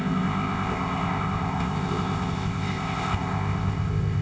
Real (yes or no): no